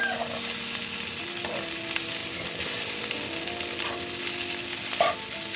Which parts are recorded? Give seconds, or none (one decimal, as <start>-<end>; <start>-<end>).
0.0-5.6